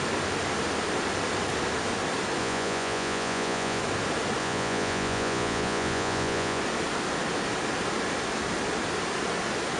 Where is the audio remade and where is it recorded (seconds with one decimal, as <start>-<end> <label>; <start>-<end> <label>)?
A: 0.0-2.4 recorded; 2.4-3.8 remade; 3.8-4.4 recorded; 4.4-6.6 remade; 6.6-9.8 recorded